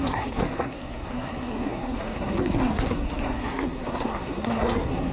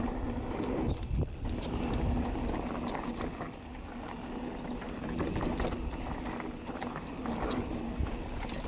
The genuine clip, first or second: second